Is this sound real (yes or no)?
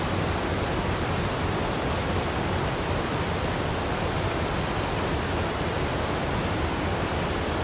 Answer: yes